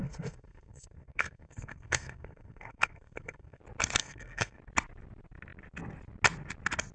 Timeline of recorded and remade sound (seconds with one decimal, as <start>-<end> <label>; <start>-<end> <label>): 0.0-3.6 remade; 3.6-4.0 recorded; 4.0-4.6 remade; 4.6-6.9 recorded